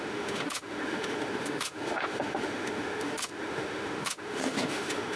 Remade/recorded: remade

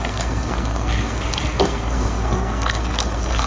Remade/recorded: remade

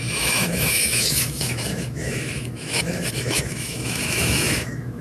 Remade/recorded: remade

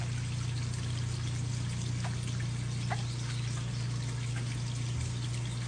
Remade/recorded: recorded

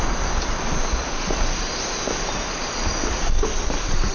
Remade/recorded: recorded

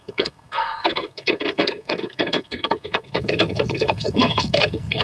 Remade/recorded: remade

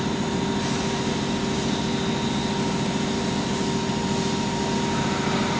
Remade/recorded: recorded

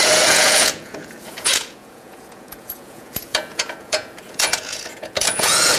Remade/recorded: remade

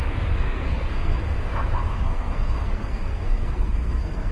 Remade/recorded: remade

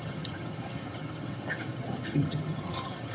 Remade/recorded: remade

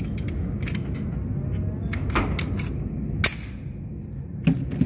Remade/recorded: recorded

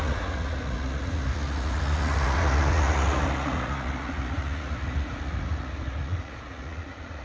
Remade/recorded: remade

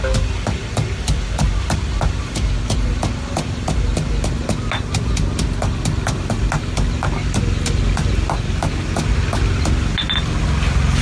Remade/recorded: recorded